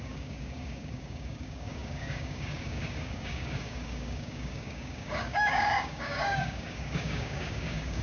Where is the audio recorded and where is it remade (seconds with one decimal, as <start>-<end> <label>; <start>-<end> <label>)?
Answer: 0.0-8.0 remade